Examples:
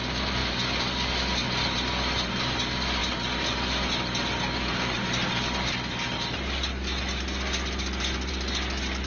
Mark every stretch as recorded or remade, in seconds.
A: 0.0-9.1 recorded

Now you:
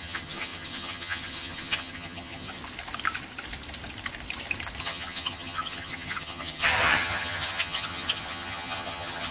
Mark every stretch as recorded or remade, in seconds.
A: 0.0-2.6 remade; 2.6-4.8 recorded; 4.8-9.3 remade

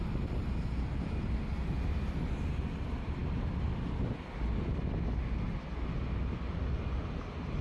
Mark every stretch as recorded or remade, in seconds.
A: 0.0-7.6 recorded

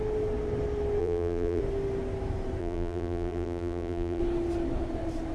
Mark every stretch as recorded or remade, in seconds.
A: 0.0-1.0 recorded; 1.0-1.6 remade; 1.6-2.6 recorded; 2.6-4.2 remade; 4.2-5.3 recorded